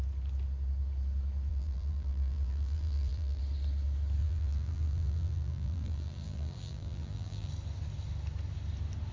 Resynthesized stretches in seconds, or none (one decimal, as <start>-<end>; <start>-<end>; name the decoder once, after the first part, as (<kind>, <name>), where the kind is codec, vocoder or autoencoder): 1.5-3.4 (vocoder, BigVGAN v2); 4.2-7.5